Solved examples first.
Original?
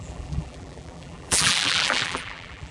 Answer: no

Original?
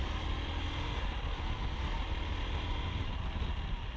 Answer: yes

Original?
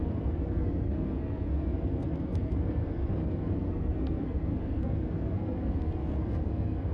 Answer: no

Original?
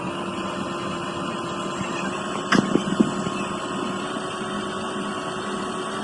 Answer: yes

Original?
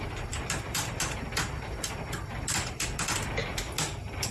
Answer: yes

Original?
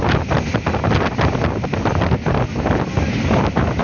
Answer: yes